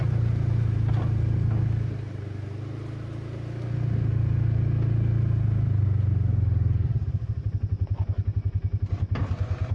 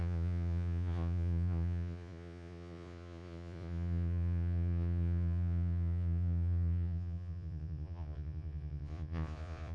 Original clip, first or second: first